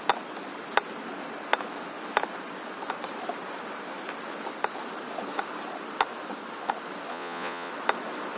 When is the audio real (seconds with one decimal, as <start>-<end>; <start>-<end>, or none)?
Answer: 0.0-7.1; 7.7-8.4